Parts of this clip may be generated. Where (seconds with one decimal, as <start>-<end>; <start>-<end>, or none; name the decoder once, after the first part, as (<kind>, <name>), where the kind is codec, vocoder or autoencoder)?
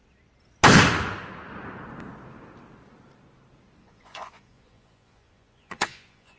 3.8-6.4 (vocoder, Vocos)